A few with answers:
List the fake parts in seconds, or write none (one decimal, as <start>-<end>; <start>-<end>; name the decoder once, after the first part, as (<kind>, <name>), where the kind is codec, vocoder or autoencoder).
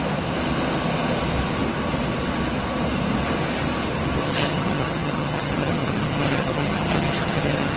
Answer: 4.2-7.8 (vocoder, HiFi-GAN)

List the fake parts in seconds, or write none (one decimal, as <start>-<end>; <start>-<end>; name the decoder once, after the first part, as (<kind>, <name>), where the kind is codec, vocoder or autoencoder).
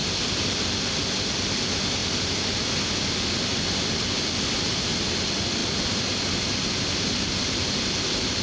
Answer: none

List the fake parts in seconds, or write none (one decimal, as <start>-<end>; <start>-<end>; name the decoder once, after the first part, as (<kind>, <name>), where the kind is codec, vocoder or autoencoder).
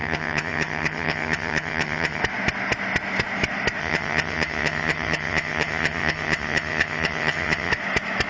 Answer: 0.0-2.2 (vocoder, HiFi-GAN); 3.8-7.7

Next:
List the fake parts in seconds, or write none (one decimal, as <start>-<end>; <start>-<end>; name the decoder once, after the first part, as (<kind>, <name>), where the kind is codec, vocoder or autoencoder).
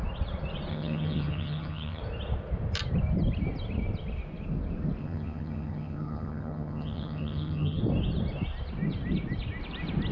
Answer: 0.7-2.0 (vocoder, HiFi-GAN); 5.0-7.8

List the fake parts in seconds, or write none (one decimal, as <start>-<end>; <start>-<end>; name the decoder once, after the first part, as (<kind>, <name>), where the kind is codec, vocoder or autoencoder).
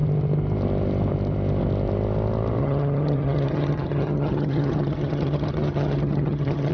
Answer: 2.6-6.7 (vocoder, HiFi-GAN)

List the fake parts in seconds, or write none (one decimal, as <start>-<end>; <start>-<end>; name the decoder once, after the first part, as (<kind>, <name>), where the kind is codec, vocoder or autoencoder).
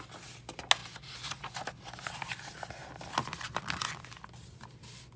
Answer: none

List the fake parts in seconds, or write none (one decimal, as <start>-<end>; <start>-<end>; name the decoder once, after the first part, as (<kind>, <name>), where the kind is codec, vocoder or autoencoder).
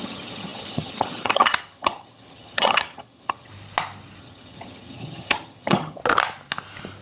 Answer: 0.0-3.5 (vocoder, HiFi-GAN); 4.2-6.0